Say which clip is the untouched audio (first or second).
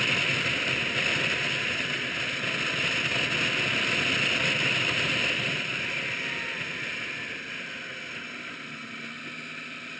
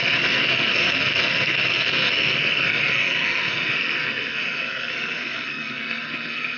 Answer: first